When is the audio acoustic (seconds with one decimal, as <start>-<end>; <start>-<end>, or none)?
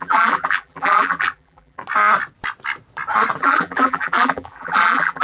1.8-3.4